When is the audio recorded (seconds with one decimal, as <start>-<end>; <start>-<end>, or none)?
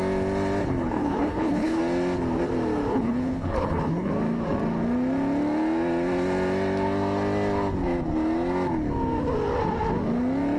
0.0-0.6; 1.8-2.9; 4.1-10.6